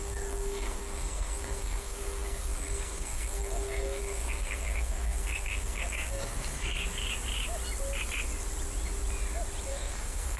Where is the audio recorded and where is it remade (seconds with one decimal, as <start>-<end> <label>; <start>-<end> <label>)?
0.0-6.8 remade; 6.8-9.7 recorded; 9.7-10.4 remade